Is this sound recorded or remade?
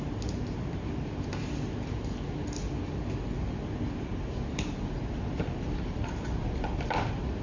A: recorded